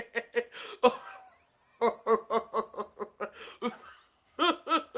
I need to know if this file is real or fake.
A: real